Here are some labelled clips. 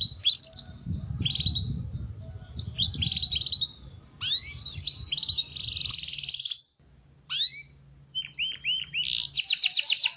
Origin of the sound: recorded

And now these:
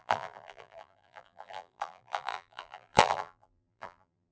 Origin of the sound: remade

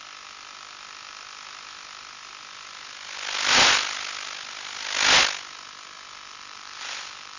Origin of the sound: recorded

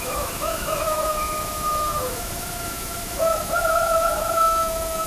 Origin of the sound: remade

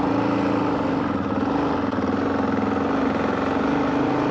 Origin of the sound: recorded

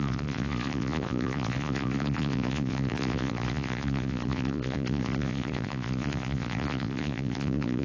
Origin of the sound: remade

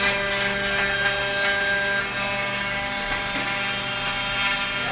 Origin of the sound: recorded